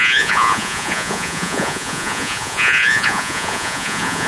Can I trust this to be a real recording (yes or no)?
no